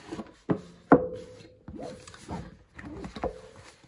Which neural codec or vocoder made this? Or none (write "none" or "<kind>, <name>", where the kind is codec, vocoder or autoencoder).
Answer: none